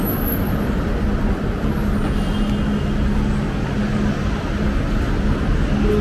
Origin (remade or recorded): recorded